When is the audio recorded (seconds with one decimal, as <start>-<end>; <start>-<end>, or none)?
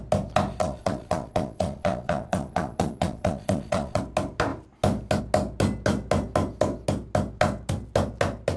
0.0-0.6; 4.0-8.6